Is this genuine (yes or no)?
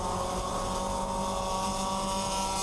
yes